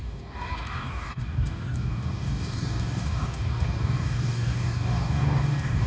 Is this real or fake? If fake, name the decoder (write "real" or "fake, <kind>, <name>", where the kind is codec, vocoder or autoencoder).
fake, codec, DAC